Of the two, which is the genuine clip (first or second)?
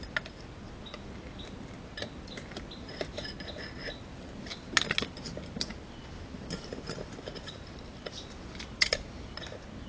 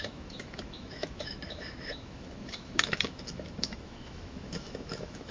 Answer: first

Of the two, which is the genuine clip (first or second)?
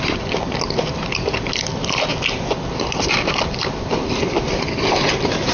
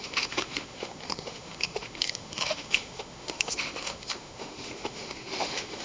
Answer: first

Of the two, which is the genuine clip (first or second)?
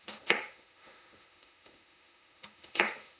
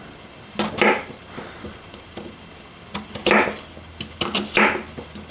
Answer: second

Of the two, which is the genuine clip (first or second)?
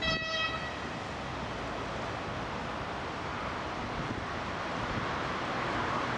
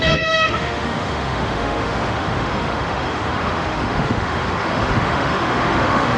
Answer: first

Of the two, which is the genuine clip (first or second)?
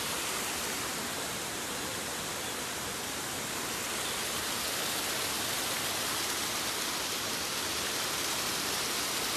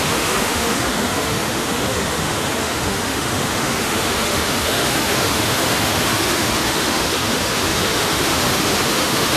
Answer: first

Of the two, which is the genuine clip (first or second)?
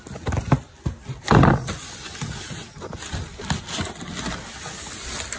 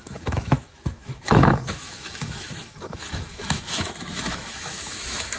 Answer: first